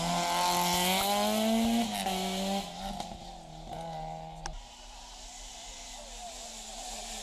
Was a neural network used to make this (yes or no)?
no